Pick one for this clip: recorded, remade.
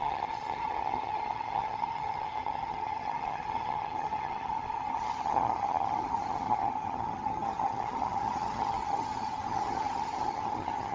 remade